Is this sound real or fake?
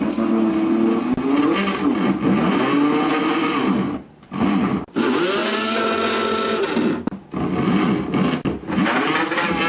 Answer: real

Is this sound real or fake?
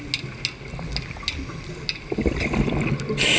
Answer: real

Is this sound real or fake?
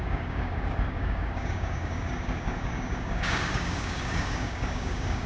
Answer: fake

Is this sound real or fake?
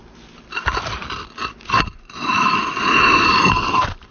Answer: real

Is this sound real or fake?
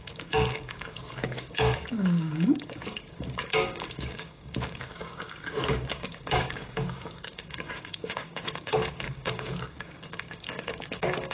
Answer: fake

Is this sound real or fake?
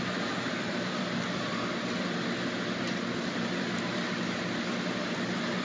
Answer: real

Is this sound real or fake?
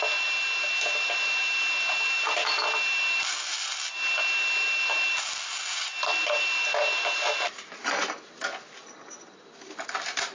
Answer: real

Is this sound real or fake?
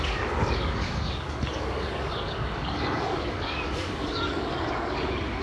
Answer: fake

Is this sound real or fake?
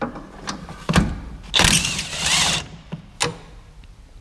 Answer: real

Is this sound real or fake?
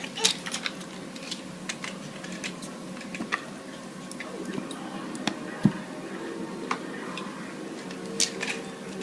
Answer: real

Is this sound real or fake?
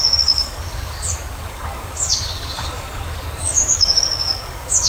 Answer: fake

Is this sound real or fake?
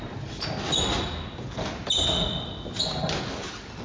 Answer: real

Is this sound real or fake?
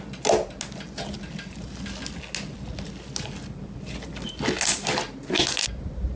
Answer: real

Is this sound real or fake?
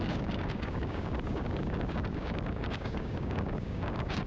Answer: fake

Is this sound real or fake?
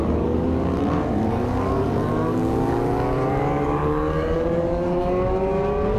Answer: fake